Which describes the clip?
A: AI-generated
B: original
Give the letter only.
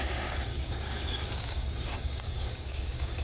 A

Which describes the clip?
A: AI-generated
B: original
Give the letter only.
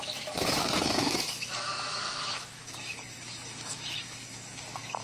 A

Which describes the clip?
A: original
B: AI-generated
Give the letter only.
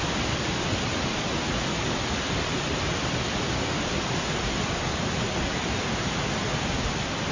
A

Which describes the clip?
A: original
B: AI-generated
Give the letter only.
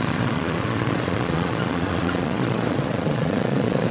B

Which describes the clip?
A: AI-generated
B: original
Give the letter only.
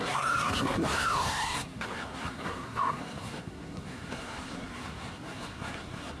A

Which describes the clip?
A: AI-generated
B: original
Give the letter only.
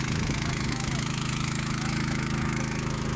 A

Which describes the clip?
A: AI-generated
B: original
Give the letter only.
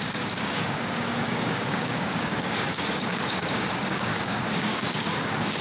A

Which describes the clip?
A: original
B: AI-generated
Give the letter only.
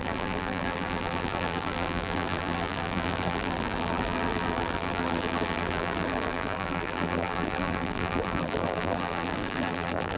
B